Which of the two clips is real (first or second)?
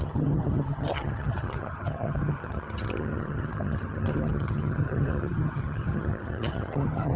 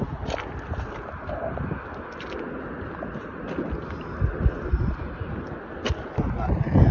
second